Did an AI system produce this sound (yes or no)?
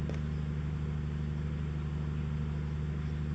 no